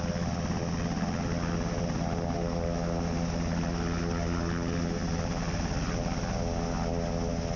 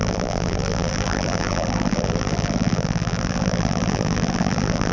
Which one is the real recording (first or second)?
first